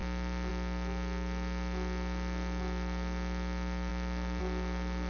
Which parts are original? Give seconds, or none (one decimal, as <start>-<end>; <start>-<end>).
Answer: 0.0-5.1